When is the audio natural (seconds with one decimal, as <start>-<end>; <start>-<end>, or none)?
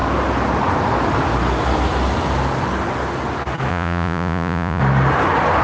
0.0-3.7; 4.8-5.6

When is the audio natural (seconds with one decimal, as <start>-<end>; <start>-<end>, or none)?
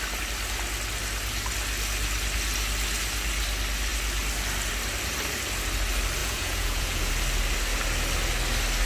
0.0-6.2; 7.1-8.9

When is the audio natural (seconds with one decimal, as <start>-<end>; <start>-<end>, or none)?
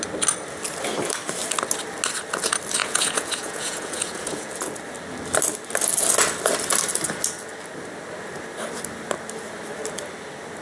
0.0-2.8; 4.5-10.6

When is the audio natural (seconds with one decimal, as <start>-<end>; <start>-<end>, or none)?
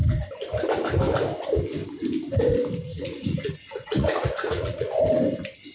0.0-2.9; 5.0-5.7